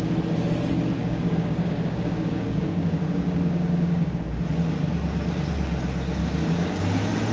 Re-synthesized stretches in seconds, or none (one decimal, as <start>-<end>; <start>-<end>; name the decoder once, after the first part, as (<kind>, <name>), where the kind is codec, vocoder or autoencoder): 1.0-4.2 (codec, DAC); 6.2-6.8